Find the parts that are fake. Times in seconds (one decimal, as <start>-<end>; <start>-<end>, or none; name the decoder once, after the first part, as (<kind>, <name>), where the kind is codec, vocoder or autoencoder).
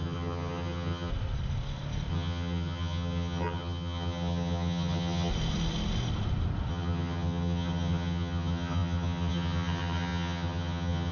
0.0-1.1 (vocoder, HiFi-GAN); 2.1-5.3; 6.7-11.1